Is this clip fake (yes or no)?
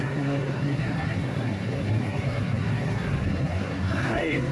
yes